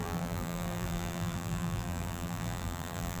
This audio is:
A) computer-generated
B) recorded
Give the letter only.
A